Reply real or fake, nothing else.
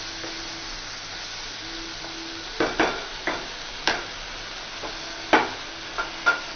real